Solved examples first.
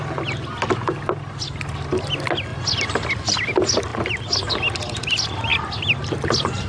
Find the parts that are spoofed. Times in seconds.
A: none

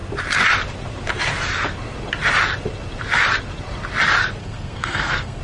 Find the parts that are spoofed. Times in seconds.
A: 4.4-5.4 (codec, SNAC)

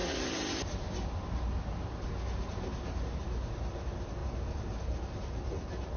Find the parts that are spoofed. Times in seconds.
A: none

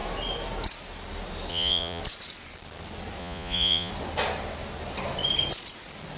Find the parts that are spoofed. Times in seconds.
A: 1.5-2.0 (vocoder, Vocos); 3.2-3.9

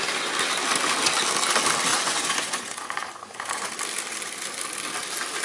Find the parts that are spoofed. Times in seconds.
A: 1.9-3.7 (vocoder, Vocos)

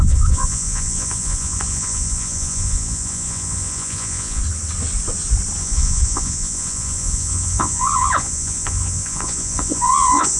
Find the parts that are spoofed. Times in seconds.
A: 0.0-4.4 (vocoder, Vocos); 5.6-10.4

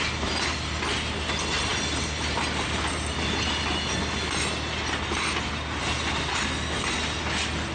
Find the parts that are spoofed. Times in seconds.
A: none